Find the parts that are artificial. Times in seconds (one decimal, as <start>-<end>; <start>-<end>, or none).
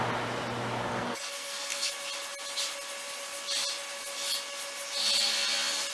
0.9-1.9